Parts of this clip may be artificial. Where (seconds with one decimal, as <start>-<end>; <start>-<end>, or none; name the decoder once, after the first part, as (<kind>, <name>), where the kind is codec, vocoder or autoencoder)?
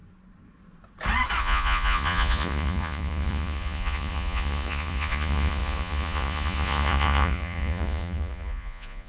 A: 1.4-9.1 (vocoder, Vocos)